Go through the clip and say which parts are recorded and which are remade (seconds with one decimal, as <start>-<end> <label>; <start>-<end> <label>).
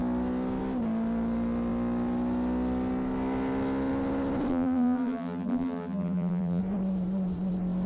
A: 0.0-4.5 recorded; 4.5-6.6 remade; 6.6-7.9 recorded